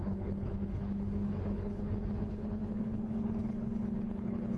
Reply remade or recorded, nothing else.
remade